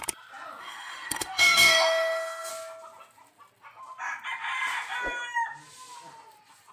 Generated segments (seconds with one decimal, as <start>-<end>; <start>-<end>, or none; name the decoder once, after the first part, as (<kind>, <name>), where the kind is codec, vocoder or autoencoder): 0.6-2.5 (autoencoder, DAC-VAE)